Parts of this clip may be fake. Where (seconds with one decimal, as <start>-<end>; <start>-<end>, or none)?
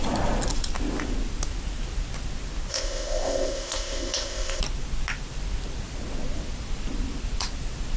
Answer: 2.7-4.6